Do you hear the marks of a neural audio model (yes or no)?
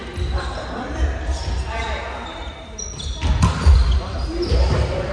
no